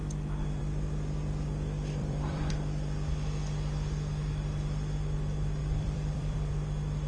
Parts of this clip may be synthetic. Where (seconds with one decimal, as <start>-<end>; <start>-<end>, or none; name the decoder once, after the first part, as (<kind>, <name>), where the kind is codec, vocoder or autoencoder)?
2.0-2.5 (vocoder, BigVGAN v2); 5.6-6.5